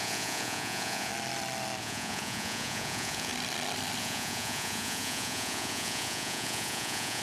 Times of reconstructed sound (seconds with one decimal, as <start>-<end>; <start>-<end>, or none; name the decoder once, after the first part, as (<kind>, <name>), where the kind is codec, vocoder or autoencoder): 0.0-1.1 (vocoder, Vocos); 1.8-3.3; 4.0-7.2